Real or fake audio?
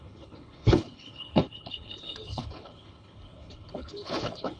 fake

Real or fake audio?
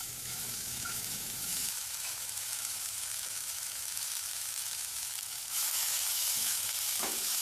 fake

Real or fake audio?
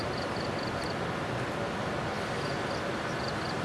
real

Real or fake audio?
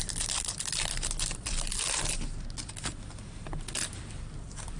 real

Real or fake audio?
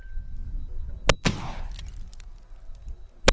real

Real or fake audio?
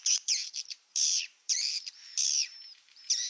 fake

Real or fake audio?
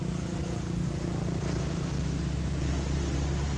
real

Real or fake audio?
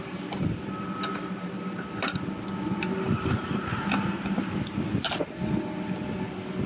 real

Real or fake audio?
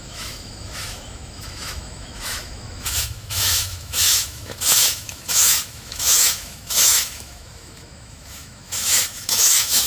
fake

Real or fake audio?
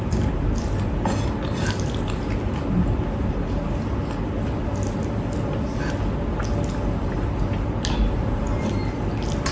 real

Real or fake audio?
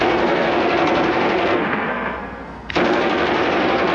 fake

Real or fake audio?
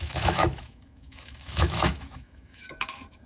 fake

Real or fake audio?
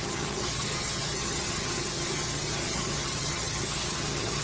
fake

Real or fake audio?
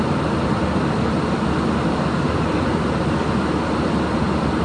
real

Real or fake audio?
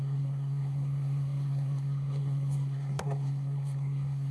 fake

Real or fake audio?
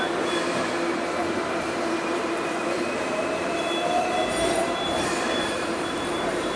fake